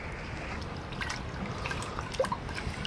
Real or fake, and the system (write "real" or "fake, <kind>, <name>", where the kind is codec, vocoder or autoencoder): real